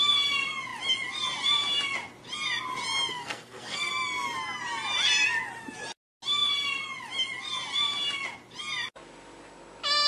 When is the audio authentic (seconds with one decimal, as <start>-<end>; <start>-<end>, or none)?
0.0-3.1; 3.9-10.1